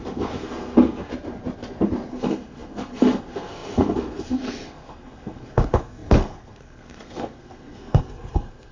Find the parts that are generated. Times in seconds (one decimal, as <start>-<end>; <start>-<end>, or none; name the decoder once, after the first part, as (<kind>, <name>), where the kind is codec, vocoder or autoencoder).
0.0-1.1 (codec, SNAC); 2.1-8.7